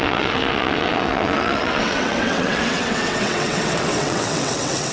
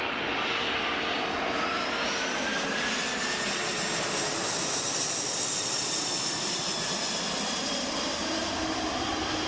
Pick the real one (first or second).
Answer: second